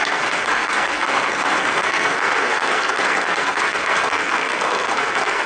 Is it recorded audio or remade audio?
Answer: remade